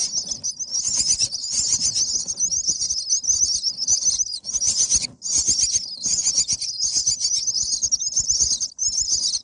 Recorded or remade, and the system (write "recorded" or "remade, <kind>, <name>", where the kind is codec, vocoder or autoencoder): recorded